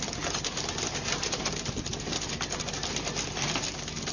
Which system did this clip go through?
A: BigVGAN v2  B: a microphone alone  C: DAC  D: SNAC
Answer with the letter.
B